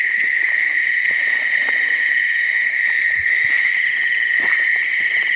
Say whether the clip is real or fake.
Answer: fake